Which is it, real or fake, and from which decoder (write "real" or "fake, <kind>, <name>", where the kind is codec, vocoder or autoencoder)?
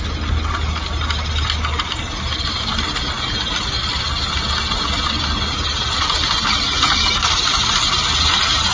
real